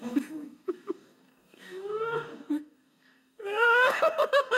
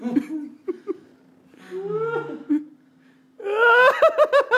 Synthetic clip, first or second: first